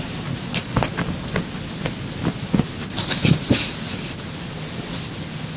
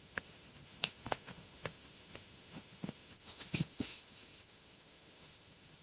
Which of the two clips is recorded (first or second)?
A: first